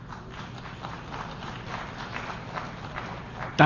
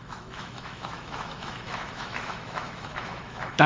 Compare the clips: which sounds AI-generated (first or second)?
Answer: second